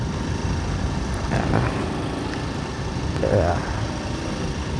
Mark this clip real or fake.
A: real